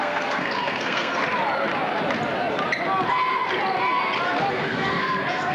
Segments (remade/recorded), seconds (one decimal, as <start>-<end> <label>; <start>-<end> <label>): 0.0-1.2 remade; 1.2-4.5 recorded; 4.5-5.5 remade